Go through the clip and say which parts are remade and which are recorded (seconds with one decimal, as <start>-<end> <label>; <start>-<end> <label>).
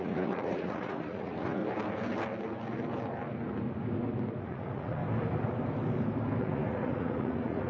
0.0-1.6 remade; 1.6-4.4 recorded; 4.4-5.0 remade; 5.0-6.4 recorded; 6.4-7.7 remade